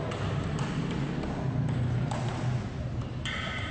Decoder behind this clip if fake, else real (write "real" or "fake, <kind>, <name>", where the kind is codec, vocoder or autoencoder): real